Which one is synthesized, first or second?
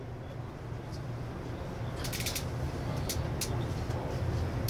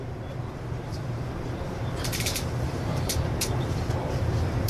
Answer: second